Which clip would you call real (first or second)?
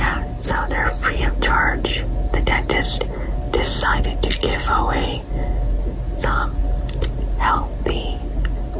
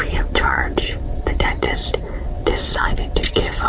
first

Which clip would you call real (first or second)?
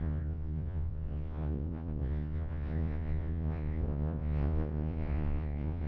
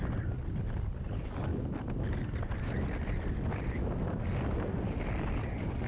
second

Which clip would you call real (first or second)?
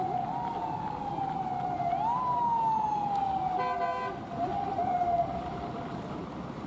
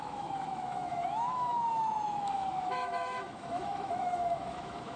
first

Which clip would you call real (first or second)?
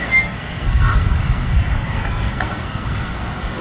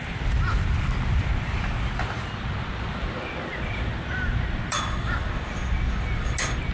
second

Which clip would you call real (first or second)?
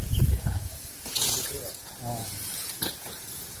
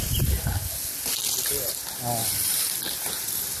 second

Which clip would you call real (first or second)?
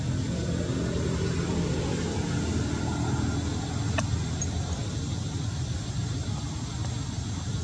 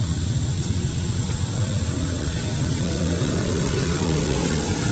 first